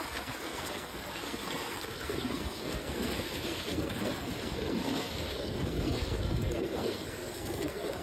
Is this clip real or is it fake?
fake